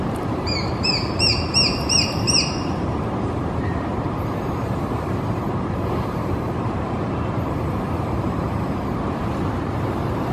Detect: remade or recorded remade